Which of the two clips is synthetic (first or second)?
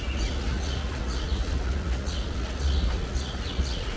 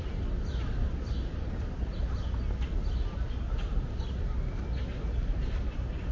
first